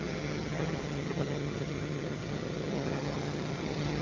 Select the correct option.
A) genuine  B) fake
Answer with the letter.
B